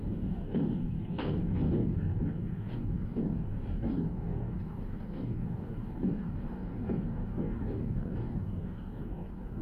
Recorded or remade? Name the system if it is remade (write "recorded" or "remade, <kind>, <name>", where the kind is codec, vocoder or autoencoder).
remade, codec, DAC